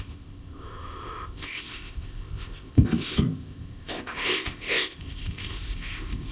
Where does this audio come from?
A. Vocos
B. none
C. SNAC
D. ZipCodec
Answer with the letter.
D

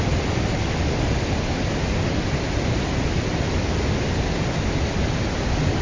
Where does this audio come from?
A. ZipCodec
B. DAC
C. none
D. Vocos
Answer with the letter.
C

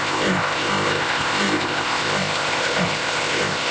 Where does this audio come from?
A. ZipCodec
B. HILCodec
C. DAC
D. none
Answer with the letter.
A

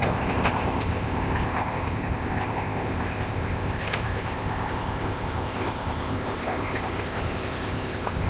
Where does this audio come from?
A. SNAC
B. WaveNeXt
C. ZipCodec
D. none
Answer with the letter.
C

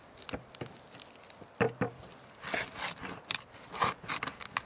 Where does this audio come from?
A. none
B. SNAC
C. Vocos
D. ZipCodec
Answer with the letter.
A